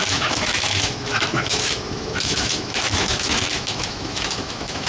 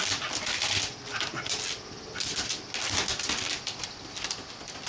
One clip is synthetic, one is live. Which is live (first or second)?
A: second